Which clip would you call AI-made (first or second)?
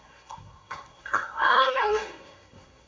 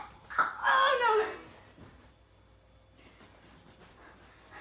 first